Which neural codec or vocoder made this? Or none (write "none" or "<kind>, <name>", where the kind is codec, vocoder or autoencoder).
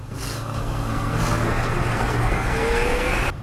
codec, SNAC